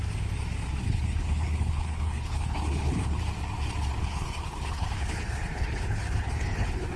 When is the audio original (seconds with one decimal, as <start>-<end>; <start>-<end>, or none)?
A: 0.0-0.8; 3.2-4.0